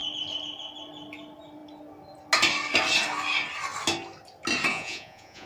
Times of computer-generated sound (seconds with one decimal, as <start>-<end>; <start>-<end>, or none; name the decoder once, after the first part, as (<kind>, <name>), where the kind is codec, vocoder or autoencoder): 4.7-5.5 (vocoder, Vocos)